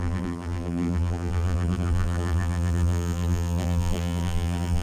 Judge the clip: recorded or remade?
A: remade